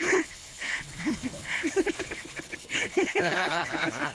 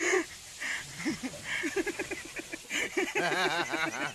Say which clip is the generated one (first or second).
first